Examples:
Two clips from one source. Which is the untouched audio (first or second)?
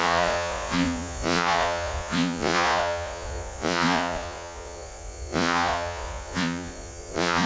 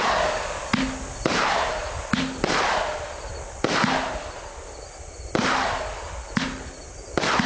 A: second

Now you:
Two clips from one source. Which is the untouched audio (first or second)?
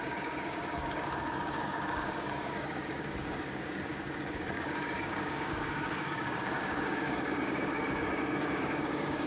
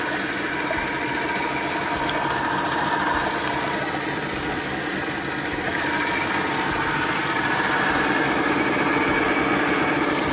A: second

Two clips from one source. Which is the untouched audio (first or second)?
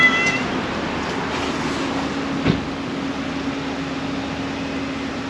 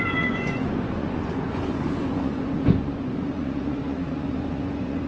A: first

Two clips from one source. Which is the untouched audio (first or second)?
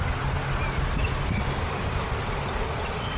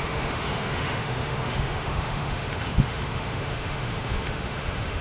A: first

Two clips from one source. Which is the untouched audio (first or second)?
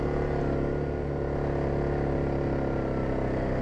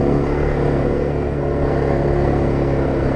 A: first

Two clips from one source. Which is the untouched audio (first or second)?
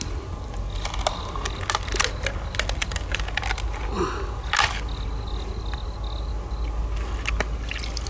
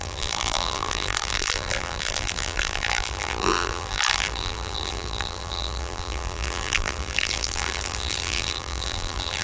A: first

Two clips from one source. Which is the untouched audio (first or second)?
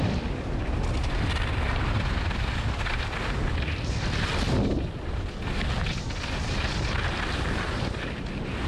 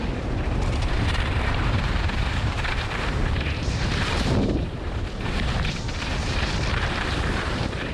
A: first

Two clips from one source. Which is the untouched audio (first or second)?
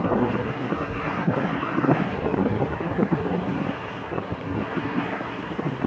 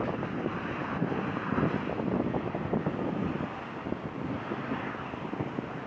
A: second